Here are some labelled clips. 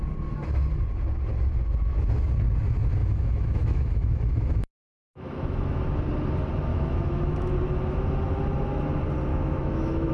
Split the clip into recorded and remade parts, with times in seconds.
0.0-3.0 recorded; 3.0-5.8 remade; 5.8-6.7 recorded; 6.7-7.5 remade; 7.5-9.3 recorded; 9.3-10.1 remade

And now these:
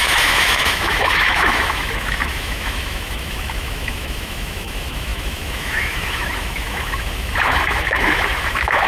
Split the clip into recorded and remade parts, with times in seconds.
0.0-8.9 remade